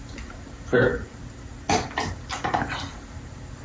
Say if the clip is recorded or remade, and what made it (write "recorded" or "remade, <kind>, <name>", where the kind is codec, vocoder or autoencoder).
recorded